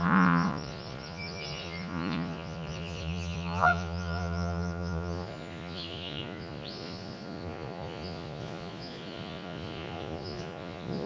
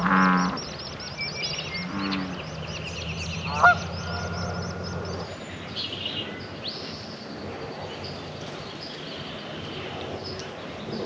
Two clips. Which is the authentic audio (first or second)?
second